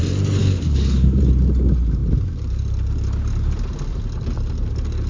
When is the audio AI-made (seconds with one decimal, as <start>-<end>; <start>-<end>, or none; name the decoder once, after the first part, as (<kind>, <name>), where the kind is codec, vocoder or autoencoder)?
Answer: 0.4-1.2 (codec, DAC)